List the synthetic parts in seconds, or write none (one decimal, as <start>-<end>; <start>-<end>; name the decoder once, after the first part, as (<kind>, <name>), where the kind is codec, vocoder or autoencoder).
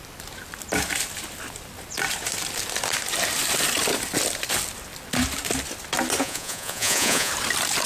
6.2-7.3 (vocoder, Vocos)